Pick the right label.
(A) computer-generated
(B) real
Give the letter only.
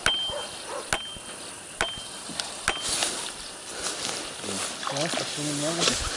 B